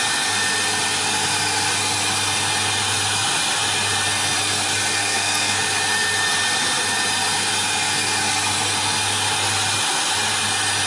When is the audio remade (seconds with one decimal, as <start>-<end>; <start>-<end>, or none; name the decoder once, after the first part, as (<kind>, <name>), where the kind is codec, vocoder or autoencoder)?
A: 5.0-5.6 (codec, SNAC)

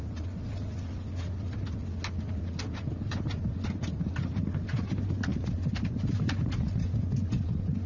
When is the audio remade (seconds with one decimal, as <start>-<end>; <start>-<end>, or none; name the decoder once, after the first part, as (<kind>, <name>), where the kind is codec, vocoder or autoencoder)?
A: none

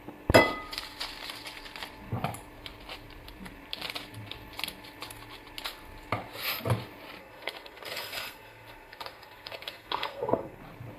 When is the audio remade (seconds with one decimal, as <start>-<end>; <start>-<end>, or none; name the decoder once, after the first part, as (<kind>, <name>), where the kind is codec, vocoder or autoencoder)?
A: 7.2-10.6 (codec, SNAC)

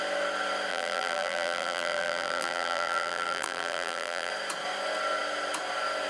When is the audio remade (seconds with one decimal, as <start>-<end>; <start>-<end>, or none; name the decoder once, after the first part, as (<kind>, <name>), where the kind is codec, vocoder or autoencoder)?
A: 0.7-4.3 (vocoder, BigVGAN v2)

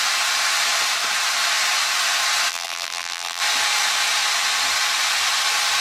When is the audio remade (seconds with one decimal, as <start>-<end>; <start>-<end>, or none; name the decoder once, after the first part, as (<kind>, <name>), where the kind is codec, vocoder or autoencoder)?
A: 2.5-3.4 (vocoder, BigVGAN v2)

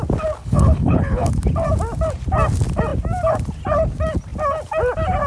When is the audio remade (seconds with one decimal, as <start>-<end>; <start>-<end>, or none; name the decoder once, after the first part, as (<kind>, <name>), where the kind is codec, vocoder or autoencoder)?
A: 0.4-1.3 (codec, HILCodec)

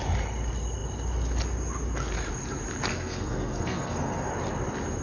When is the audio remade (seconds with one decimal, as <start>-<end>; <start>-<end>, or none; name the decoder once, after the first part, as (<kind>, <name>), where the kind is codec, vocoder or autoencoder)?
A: 2.9-4.3 (codec, SNAC)

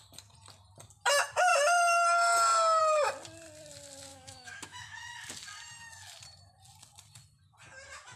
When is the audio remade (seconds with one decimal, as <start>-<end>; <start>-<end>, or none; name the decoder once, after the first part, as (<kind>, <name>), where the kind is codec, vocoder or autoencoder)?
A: 4.1-5.1 (autoencoder, DAC-VAE)